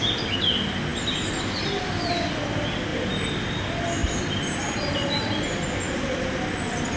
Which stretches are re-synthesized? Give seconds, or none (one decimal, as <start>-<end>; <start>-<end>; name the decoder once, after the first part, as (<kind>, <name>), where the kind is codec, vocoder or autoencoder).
none